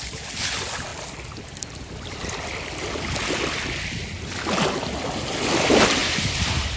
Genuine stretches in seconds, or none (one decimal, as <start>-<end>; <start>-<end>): 0.0-6.0